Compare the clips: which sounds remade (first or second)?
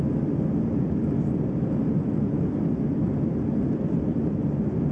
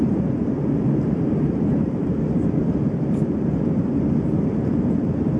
second